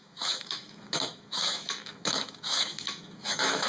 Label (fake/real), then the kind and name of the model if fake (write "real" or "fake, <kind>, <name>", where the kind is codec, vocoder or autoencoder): fake, autoencoder, DAC-VAE